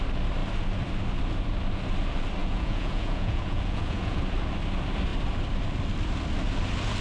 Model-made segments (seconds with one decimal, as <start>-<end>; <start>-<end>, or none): 2.4-4.2